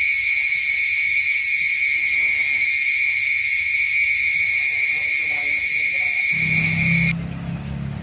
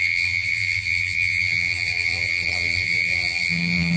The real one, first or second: first